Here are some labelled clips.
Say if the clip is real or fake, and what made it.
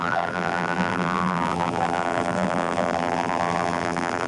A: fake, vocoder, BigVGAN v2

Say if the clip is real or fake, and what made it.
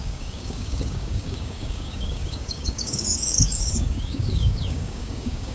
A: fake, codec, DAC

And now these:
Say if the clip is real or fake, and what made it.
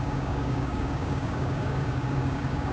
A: fake, codec, DAC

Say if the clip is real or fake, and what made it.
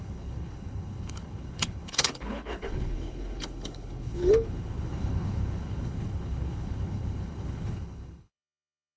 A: fake, codec, HILCodec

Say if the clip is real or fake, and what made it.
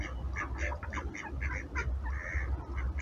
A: real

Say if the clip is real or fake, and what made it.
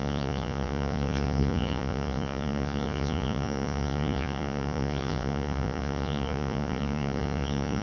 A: fake, vocoder, Vocos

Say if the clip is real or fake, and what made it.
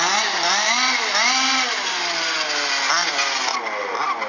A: real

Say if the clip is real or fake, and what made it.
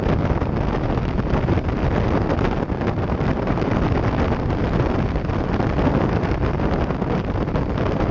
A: real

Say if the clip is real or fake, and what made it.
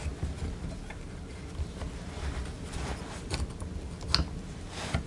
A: real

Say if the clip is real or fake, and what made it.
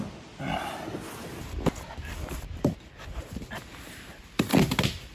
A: real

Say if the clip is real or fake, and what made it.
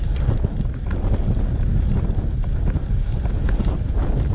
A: real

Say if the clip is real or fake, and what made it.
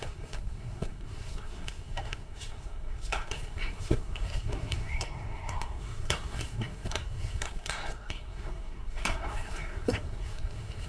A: fake, codec, SNAC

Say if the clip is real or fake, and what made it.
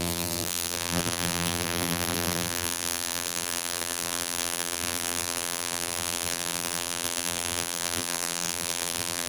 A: fake, vocoder, BigVGAN v2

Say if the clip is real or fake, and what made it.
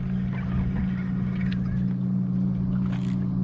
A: real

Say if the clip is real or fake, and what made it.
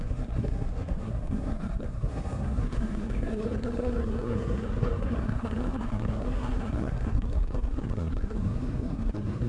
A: fake, codec, SNAC